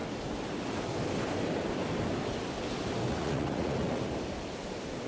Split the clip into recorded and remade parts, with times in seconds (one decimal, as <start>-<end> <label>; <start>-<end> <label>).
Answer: 0.0-3.1 recorded; 3.1-4.0 remade; 4.0-5.1 recorded